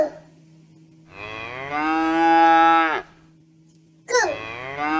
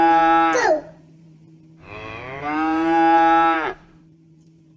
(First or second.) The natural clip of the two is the first